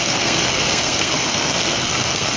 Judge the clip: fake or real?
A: fake